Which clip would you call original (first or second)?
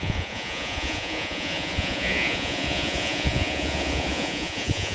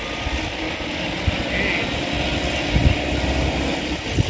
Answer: second